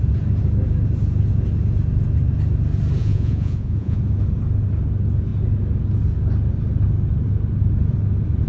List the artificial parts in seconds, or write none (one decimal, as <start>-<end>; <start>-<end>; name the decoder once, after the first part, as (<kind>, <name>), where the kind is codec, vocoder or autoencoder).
3.0-4.0 (vocoder, Vocos)